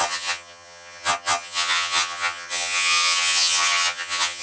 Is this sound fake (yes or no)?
yes